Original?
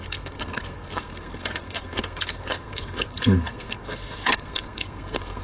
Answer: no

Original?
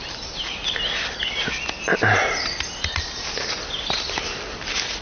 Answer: yes